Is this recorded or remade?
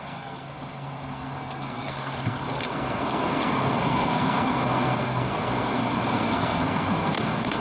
remade